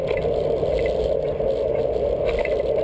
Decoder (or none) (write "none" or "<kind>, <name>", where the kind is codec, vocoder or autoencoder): none